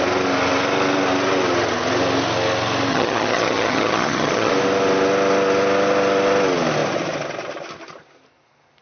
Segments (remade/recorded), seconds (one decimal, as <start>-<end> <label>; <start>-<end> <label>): 0.0-2.9 recorded; 2.9-4.5 remade; 4.5-8.8 recorded